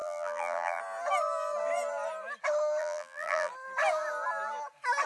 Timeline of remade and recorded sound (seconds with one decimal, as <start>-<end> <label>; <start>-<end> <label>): 0.0-0.8 remade; 0.8-2.8 recorded; 2.8-3.5 remade; 3.5-5.1 recorded